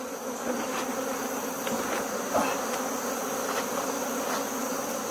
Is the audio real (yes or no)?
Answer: yes